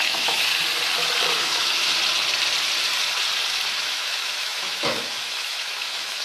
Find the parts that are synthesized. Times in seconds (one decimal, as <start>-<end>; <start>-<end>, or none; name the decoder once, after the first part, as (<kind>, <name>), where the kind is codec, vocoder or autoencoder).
0.0-0.5 (autoencoder, DAC-VAE); 1.4-1.9; 3.8-6.2